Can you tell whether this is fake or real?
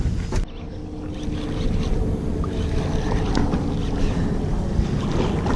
real